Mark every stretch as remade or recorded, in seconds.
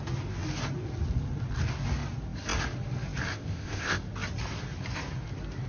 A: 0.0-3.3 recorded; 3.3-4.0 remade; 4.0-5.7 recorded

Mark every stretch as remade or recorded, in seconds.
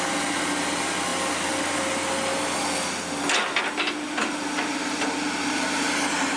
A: 0.0-6.4 recorded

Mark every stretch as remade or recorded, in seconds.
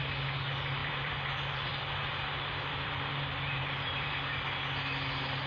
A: 0.0-0.8 recorded; 0.8-4.1 remade; 4.1-5.5 recorded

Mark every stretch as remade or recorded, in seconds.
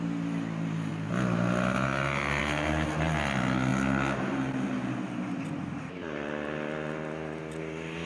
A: 0.0-8.1 recorded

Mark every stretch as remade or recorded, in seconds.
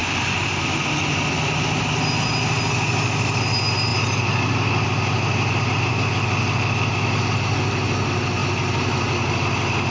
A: 0.0-9.9 recorded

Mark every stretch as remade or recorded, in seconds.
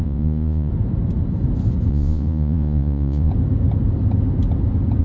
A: 0.0-0.7 remade; 0.7-1.9 recorded; 1.9-3.3 remade; 3.3-5.0 recorded